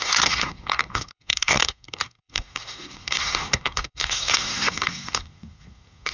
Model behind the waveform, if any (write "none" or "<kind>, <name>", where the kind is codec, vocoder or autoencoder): codec, SNAC